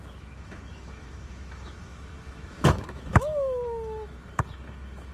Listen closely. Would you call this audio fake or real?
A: fake